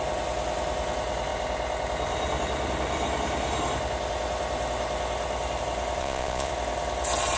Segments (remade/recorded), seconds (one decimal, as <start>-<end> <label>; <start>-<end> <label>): 0.0-6.0 recorded; 6.0-6.5 remade; 6.5-7.4 recorded